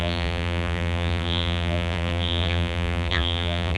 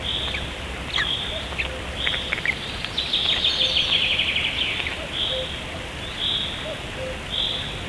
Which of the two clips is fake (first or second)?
first